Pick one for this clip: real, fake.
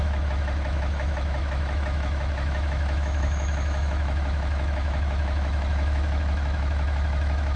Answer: fake